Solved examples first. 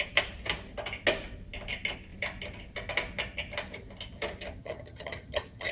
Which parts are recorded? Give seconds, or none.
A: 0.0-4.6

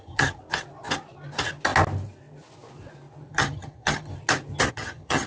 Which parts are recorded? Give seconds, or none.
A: 0.4-3.3; 4.1-4.7

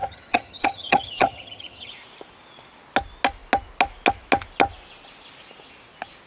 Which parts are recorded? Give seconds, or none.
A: 1.9-6.3

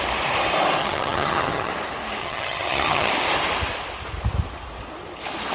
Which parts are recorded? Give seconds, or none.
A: 0.0-0.8; 1.7-2.2; 3.1-5.5

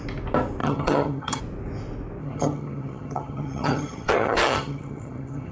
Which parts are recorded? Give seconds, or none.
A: 0.0-0.6; 1.4-2.2

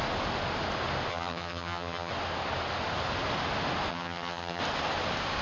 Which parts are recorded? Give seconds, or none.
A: 0.0-1.1; 2.1-3.9; 4.6-5.4

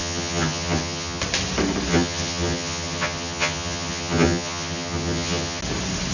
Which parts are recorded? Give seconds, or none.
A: 1.2-1.9; 5.6-6.1